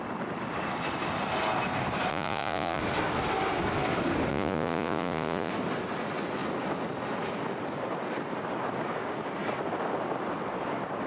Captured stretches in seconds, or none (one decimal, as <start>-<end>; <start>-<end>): 0.0-2.1; 2.8-4.3; 5.5-11.1